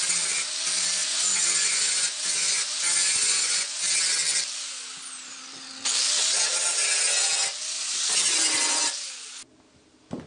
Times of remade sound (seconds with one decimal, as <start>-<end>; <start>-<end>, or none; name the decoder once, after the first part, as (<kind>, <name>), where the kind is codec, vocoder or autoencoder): 1.0-3.8 (vocoder, Vocos)